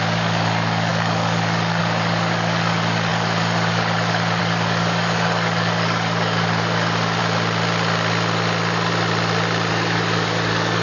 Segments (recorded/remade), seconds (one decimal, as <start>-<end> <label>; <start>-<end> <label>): 0.0-7.2 remade; 7.2-9.7 recorded; 9.7-10.8 remade